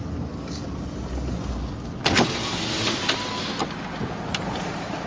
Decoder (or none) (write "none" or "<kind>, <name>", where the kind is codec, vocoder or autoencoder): none